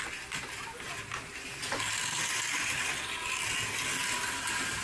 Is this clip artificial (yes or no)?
no